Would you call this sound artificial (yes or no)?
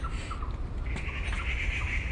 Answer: no